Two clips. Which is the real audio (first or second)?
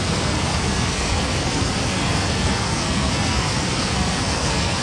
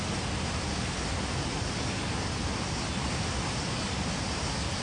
second